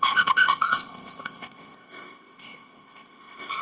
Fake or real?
fake